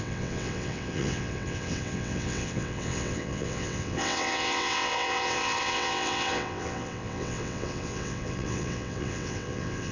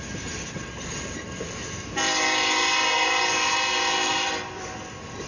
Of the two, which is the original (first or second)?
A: second